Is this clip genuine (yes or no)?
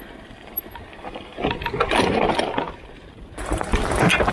yes